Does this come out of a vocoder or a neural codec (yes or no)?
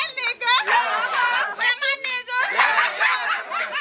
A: no